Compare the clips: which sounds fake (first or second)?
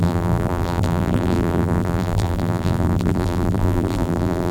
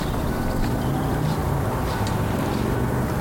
first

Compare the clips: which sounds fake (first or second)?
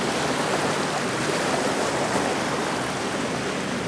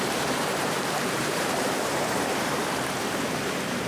second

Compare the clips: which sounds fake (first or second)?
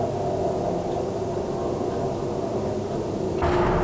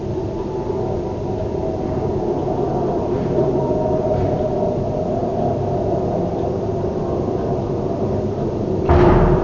second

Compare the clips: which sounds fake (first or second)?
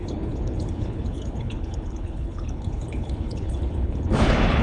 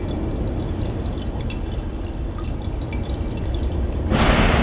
first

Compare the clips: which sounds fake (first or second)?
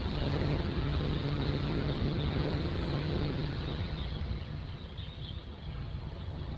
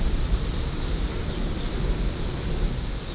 first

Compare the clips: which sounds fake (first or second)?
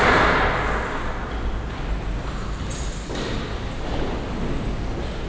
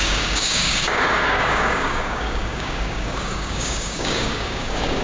second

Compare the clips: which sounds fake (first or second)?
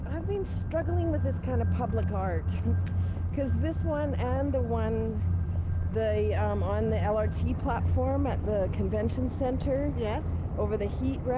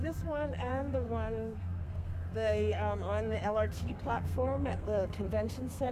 second